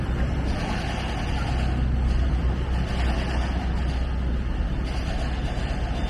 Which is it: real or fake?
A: real